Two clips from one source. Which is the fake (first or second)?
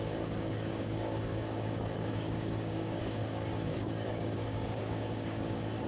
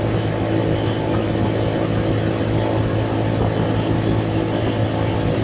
first